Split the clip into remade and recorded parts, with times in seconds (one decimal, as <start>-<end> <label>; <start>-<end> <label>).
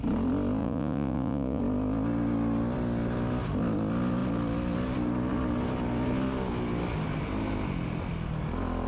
0.0-0.6 recorded; 0.6-1.6 remade; 1.6-8.9 recorded